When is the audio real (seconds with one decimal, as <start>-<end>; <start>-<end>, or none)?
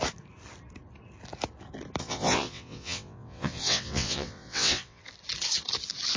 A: 0.0-2.0; 5.0-6.2